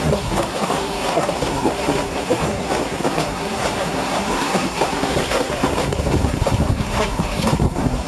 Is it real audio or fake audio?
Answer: fake